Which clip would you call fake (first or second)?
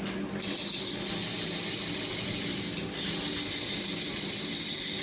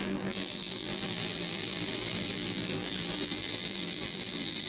second